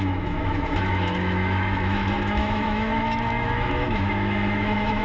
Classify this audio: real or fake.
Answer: fake